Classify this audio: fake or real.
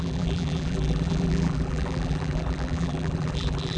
fake